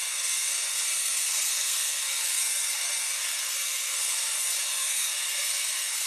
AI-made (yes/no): yes